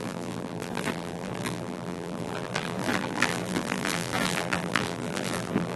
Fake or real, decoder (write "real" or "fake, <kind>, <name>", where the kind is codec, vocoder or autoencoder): fake, vocoder, BigVGAN v2